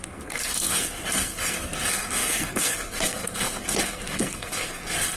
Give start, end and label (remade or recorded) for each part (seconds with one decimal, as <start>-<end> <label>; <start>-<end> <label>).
0.0-5.2 remade